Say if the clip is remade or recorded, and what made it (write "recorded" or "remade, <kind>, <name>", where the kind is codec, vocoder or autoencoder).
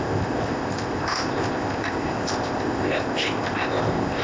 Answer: remade, codec, ZipCodec